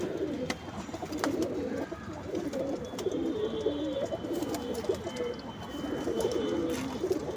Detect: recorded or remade recorded